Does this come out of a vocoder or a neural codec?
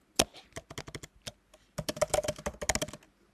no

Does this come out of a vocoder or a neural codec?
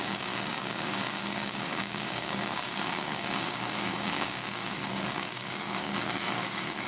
yes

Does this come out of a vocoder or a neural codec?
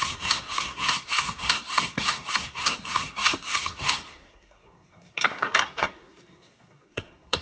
yes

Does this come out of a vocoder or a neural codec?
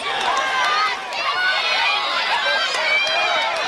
no